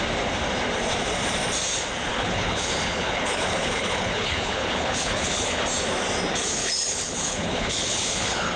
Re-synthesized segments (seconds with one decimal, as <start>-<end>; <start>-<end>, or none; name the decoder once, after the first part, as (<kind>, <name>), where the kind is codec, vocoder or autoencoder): 2.1-5.6 (codec, HILCodec); 6.6-8.6